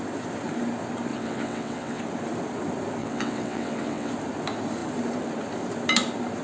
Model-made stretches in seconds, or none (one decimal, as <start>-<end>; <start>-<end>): 1.1-2.0; 3.0-4.1